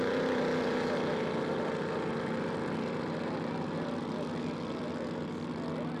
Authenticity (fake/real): real